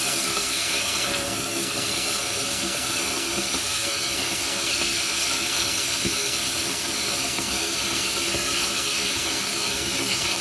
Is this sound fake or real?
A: fake